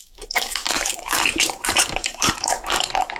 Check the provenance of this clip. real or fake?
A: fake